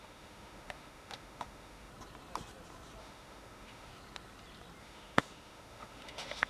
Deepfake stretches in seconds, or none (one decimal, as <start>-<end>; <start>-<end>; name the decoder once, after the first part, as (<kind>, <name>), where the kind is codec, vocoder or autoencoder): 0.0-1.9 (autoencoder, DAC-VAE); 3.0-3.9; 4.8-6.5